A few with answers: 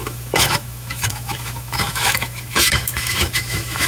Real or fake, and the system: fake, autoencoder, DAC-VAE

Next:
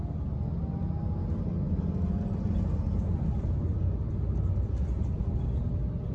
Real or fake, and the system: real